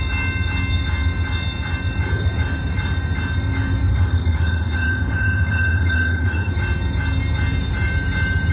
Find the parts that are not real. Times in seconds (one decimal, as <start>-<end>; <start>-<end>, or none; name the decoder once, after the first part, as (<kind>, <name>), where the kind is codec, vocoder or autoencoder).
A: 3.9-6.5 (autoencoder, DAC-VAE)